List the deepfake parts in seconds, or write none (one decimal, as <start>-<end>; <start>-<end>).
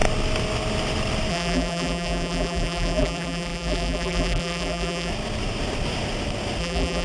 1.3-5.1; 6.6-7.0